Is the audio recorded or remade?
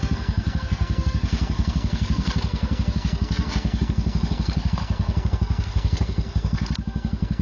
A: remade